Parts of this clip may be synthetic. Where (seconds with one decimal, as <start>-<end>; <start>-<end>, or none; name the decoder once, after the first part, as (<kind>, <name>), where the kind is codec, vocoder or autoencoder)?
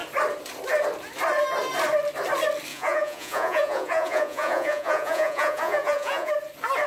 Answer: 2.7-6.3 (vocoder, Vocos)